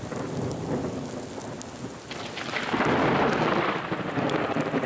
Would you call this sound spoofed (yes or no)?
no